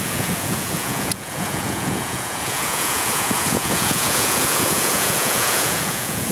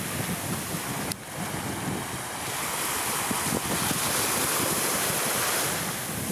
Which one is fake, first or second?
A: first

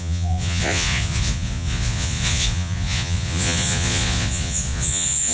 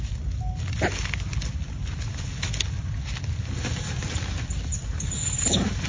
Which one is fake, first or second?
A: first